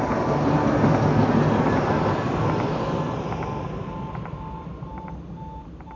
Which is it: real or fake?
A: real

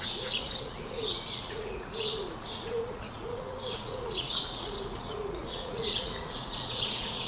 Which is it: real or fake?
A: fake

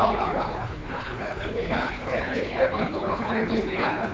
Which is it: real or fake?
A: fake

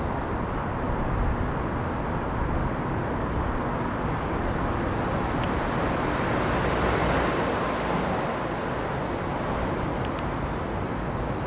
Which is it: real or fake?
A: real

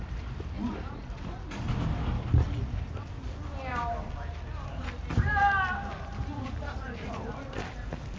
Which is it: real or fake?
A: real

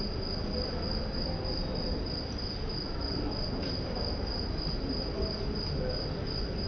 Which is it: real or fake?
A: real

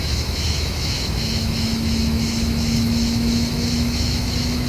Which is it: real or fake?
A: fake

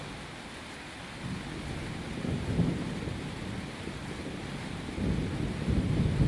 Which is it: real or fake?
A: real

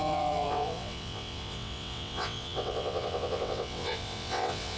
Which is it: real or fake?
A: fake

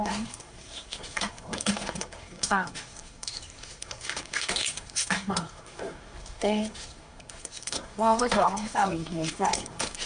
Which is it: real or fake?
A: fake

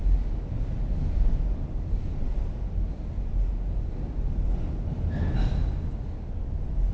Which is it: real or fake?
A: real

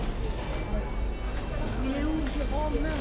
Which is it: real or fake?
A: real